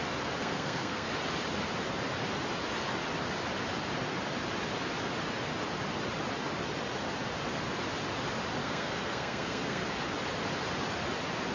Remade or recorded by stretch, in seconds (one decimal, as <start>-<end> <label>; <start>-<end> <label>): 0.0-0.4 recorded; 0.4-1.1 remade; 1.1-8.6 recorded; 8.6-9.8 remade; 9.8-11.5 recorded